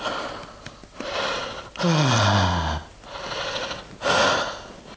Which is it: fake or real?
real